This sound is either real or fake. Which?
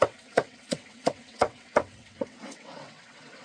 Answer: fake